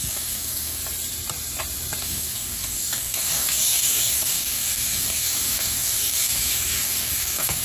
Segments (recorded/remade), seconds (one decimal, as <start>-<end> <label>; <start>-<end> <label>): 0.0-0.8 remade; 0.8-2.0 recorded; 2.0-7.6 remade